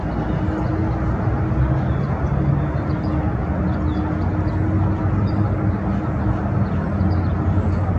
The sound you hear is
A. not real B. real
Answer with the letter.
B